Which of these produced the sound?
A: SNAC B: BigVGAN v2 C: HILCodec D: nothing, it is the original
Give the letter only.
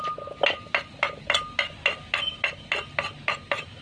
D